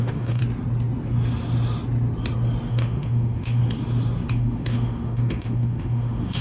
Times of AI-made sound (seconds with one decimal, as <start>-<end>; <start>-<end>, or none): 0.0-0.4; 2.7-3.6; 4.3-6.4